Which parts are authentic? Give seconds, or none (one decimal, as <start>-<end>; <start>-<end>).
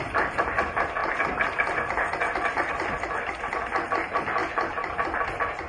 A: 0.0-5.7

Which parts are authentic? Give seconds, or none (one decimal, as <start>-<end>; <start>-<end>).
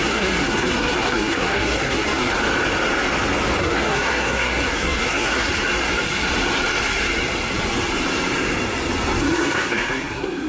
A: 2.3-3.6; 5.5-9.2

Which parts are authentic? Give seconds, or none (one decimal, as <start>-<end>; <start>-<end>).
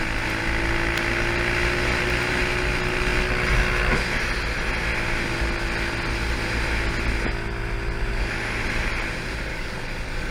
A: 0.0-9.5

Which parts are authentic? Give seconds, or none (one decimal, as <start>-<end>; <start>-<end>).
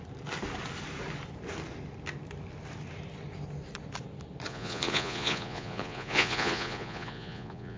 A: 0.0-4.5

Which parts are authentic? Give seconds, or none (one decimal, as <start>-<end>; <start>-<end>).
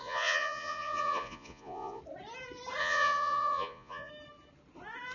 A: 2.0-2.8; 4.1-5.1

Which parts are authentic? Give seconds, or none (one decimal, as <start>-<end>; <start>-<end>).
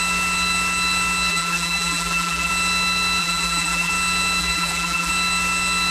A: 0.0-1.3; 2.5-3.2; 3.9-4.4; 5.1-5.9